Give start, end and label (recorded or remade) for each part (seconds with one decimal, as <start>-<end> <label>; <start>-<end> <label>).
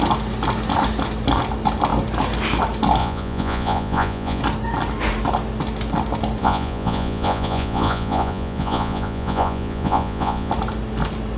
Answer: 0.0-3.0 recorded; 3.0-4.4 remade; 4.4-6.4 recorded; 6.4-10.5 remade; 10.5-11.4 recorded